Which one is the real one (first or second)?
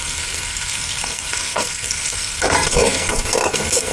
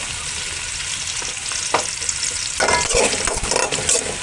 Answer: second